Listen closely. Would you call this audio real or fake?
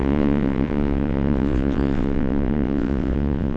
fake